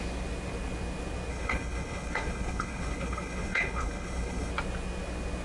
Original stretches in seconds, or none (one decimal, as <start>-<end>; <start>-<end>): 0.0-1.3; 4.5-5.4